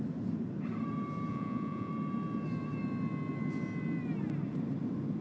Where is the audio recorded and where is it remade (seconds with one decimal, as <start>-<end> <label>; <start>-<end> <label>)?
0.0-1.3 recorded; 1.3-1.9 remade; 1.9-5.2 recorded